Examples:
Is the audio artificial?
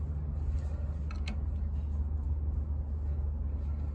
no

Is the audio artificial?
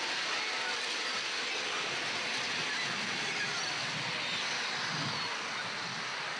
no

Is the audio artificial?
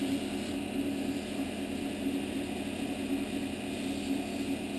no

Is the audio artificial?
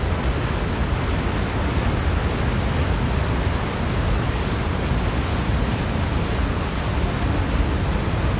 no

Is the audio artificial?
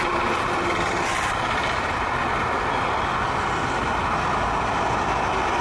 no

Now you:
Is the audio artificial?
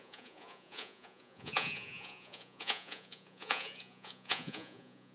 yes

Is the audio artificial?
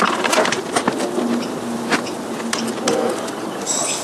no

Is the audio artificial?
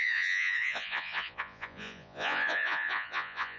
yes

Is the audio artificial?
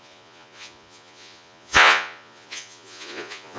yes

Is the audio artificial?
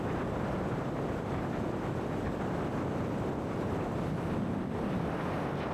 no